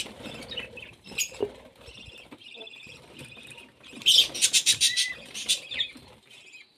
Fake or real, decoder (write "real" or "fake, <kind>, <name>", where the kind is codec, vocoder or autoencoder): fake, vocoder, BigVGAN v2